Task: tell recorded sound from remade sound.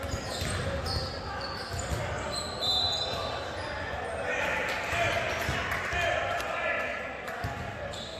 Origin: recorded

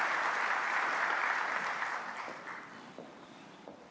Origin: recorded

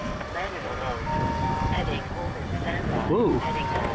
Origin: recorded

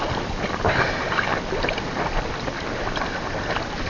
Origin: recorded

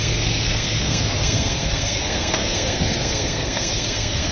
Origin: remade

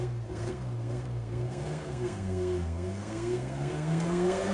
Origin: remade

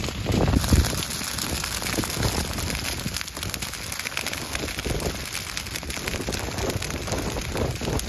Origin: recorded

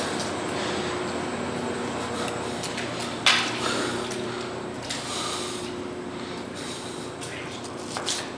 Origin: recorded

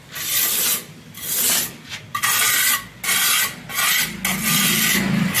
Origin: recorded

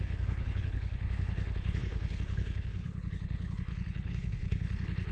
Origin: remade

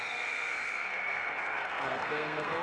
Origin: remade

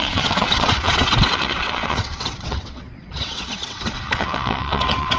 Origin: remade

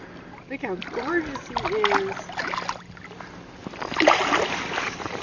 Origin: recorded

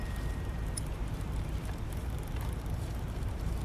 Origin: remade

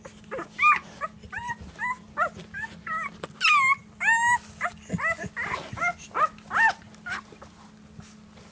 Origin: recorded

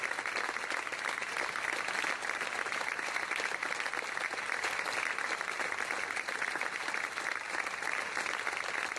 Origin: recorded